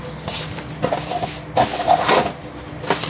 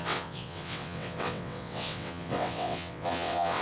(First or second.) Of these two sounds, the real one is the first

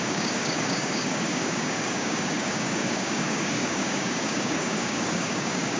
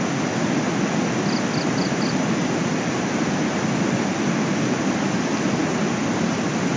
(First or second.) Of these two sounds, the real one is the second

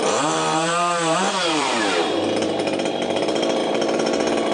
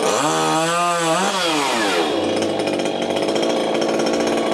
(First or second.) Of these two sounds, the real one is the second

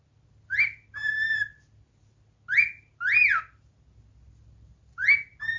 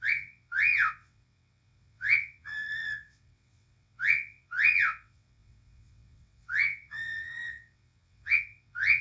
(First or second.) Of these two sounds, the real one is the first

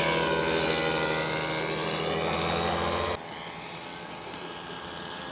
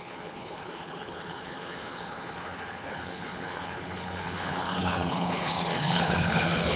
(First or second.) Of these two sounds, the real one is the first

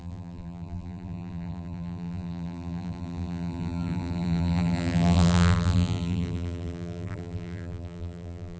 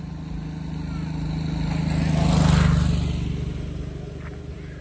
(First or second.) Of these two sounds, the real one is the second